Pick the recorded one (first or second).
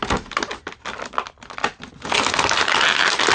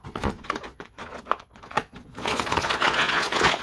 first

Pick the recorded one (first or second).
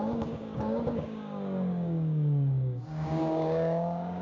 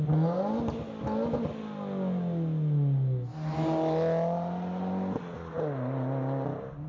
second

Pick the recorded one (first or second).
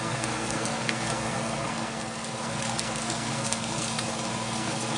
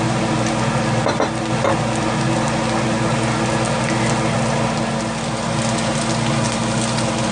second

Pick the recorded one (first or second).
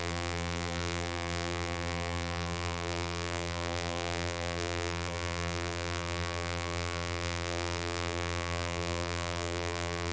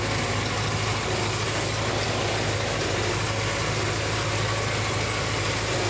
second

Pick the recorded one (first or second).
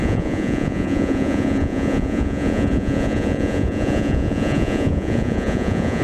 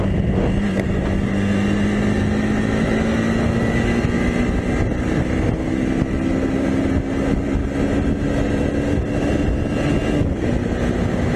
second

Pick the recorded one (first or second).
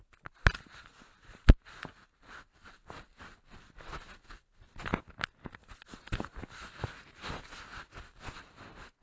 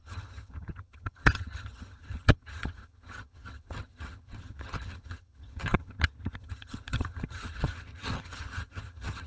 first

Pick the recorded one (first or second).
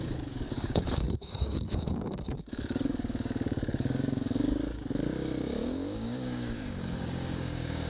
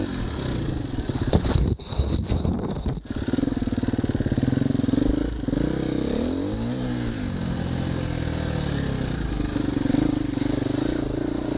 second